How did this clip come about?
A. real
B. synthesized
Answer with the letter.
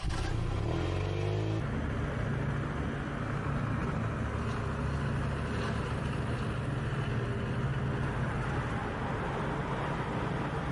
A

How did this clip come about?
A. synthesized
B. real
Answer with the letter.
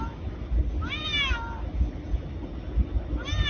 B